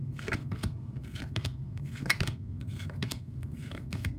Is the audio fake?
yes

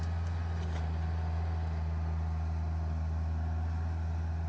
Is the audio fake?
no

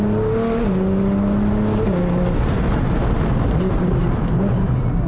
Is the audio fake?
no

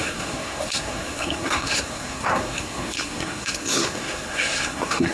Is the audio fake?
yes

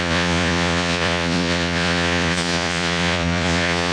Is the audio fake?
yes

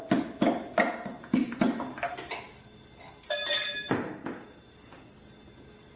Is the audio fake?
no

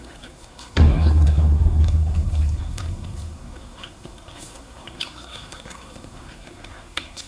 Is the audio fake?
yes